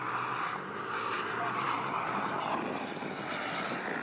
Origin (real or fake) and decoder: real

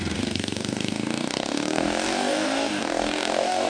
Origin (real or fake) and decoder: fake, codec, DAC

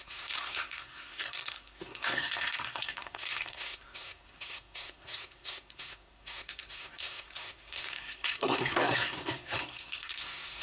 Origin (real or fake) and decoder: fake, codec, SNAC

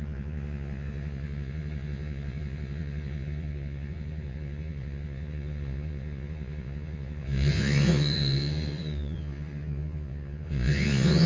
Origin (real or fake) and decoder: fake, vocoder, Vocos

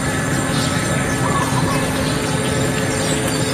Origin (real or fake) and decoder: real